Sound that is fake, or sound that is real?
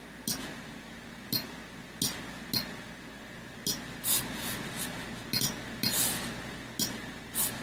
real